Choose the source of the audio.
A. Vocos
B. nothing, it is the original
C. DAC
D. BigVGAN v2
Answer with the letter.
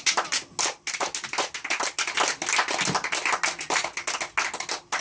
B